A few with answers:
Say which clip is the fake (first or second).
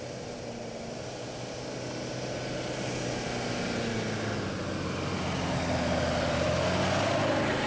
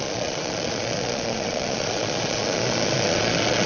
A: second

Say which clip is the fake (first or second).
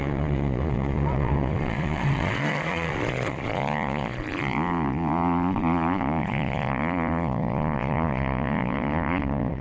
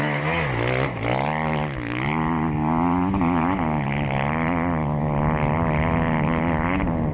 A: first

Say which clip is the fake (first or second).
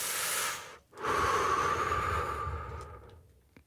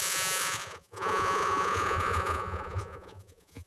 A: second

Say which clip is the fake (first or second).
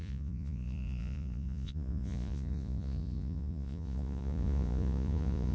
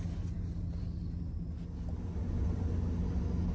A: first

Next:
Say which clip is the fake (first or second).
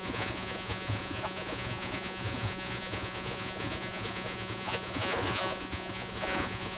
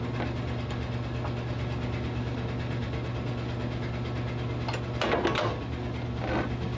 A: first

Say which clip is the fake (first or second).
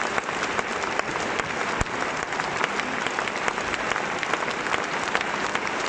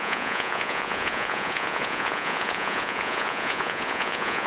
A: second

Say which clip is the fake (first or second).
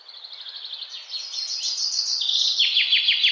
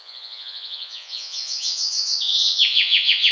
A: second